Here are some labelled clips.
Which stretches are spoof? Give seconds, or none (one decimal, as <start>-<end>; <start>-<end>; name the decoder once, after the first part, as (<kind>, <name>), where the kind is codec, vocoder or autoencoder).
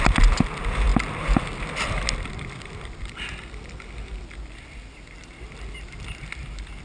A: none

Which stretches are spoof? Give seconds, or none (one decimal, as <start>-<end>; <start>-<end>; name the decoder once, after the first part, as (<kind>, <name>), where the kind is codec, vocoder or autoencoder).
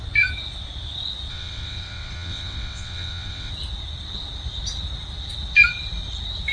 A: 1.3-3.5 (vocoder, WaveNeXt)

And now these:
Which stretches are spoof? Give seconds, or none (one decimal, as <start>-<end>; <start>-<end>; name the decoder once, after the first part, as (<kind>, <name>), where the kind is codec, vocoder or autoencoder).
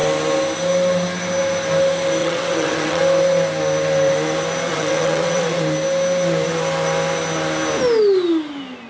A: 2.2-3.0 (vocoder, WaveNeXt); 4.7-5.6